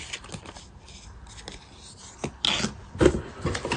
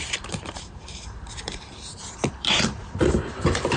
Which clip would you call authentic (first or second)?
first